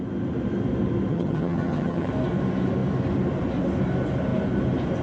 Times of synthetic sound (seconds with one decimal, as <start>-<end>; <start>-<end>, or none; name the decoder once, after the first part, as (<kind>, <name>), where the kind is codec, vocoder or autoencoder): 1.1-2.1 (vocoder, HiFi-GAN)